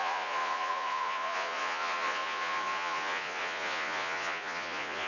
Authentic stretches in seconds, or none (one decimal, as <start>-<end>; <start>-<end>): none